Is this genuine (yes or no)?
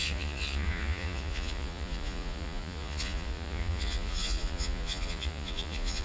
no